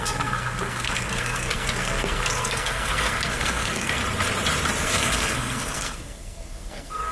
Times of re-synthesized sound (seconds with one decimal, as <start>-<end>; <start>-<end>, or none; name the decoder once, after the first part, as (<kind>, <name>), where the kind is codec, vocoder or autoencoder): 0.0-4.0 (codec, SNAC); 4.8-7.1